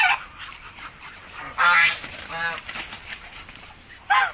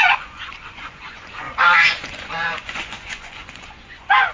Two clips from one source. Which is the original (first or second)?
first